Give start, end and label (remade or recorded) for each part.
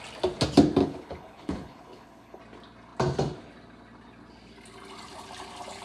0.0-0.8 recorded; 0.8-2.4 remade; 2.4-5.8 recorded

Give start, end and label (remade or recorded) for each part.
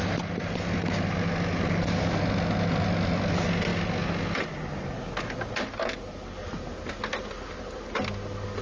0.0-8.6 recorded